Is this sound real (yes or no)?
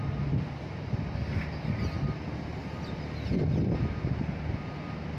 yes